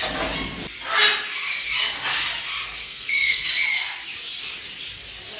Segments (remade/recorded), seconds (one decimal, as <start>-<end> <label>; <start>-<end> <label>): 0.0-2.8 recorded; 2.8-3.5 remade; 3.5-5.4 recorded